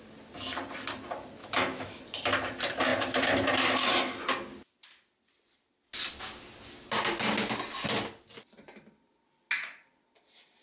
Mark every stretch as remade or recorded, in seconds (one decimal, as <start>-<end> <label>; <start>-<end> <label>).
0.0-1.4 recorded; 1.4-2.0 remade; 2.0-10.6 recorded